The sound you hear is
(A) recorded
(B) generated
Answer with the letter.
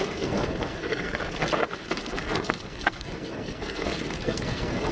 B